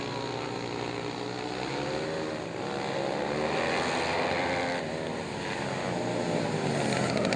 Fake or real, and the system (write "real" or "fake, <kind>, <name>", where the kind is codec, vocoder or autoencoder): real